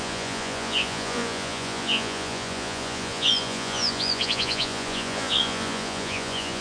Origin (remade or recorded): remade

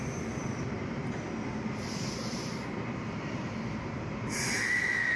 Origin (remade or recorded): remade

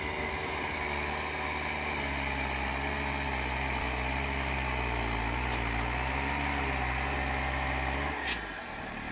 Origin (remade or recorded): recorded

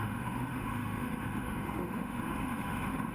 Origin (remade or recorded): remade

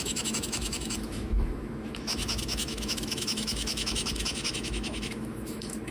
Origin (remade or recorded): remade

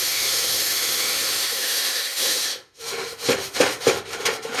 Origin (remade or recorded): remade